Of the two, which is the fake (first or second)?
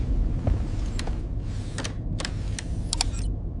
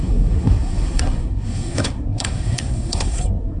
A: second